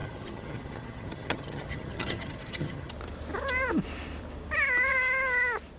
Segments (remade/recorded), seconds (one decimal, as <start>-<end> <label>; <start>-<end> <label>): 0.0-2.9 remade; 2.9-5.8 recorded